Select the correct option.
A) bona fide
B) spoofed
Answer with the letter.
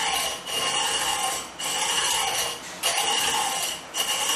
A